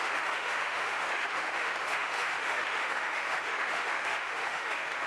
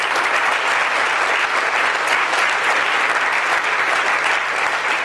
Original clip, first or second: second